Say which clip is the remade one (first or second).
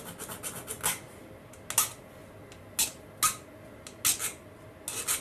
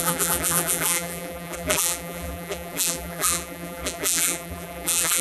second